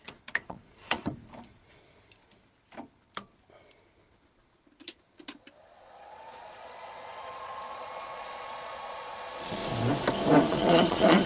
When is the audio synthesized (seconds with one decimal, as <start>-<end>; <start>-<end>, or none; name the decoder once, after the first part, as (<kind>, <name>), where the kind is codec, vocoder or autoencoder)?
0.0-1.1 (vocoder, Vocos); 5.9-9.6; 10.4-11.3